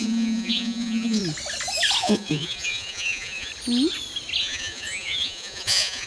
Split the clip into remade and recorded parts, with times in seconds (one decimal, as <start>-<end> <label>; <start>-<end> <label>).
0.0-1.2 remade; 1.2-2.0 recorded; 2.0-3.5 remade; 3.5-4.4 recorded; 4.4-6.1 remade